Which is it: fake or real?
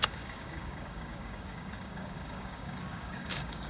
fake